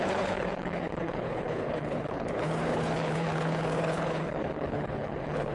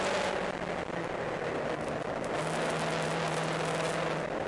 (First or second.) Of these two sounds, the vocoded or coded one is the first